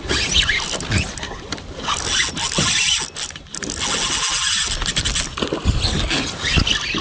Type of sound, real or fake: real